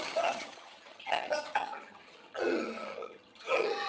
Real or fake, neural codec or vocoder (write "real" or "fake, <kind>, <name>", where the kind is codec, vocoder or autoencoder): fake, vocoder, HiFi-GAN